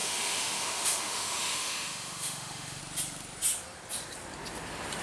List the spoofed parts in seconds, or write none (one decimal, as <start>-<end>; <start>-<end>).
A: 0.0-2.8